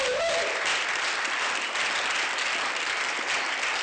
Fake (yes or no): no